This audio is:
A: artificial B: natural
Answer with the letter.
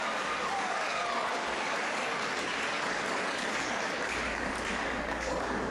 A